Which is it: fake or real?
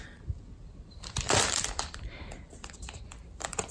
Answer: fake